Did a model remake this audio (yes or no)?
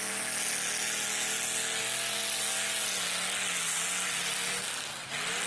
no